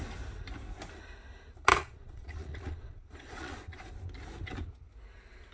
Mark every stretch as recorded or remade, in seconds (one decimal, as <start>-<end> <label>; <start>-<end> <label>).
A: 0.0-1.7 recorded; 1.7-3.9 remade; 3.9-5.5 recorded